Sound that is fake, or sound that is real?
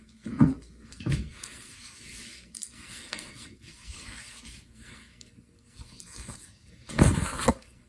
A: fake